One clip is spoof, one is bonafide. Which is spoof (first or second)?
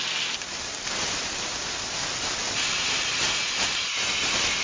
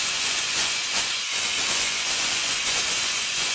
second